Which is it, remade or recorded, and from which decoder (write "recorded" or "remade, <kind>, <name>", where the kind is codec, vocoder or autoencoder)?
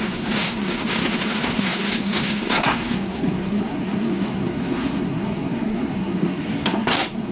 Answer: remade, codec, SNAC